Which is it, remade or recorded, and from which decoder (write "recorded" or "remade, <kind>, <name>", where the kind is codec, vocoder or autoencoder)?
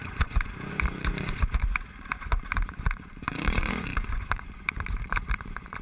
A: remade, vocoder, Vocos